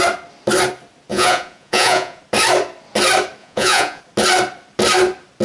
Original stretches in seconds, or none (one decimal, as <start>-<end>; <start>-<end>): 0.0-1.1; 2.2-3.4; 4.0-5.4